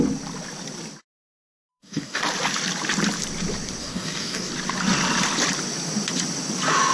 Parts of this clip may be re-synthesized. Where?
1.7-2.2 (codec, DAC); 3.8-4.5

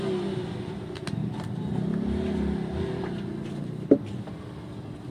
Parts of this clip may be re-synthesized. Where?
none

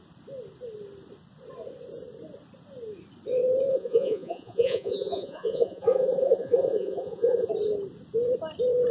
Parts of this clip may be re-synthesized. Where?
3.7-7.5 (vocoder, Vocos)

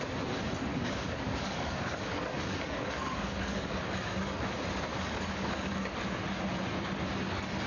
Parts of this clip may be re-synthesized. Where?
0.7-4.4 (codec, DAC); 4.9-6.0

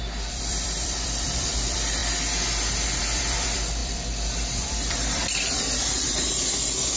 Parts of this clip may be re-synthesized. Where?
0.0-2.0 (vocoder, BigVGAN v2); 3.0-7.0